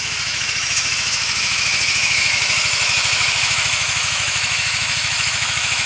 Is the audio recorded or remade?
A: remade